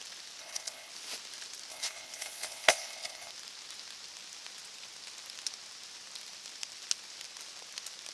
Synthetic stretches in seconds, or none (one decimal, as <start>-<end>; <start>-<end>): 0.4-0.9; 1.7-3.3